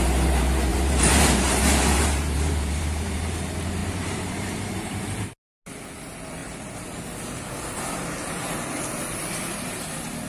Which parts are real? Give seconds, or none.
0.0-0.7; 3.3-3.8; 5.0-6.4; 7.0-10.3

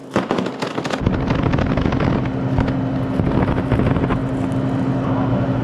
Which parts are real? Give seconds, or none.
0.0-5.6

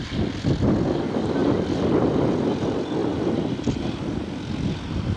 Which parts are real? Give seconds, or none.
0.0-3.0; 4.0-5.2